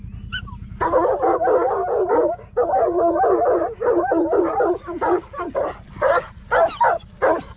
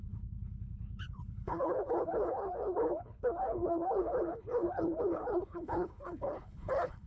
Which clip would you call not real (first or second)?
second